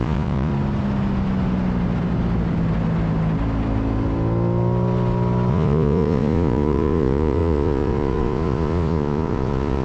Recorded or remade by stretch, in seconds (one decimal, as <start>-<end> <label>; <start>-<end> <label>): 0.0-0.5 remade; 0.5-5.5 recorded; 5.5-9.8 remade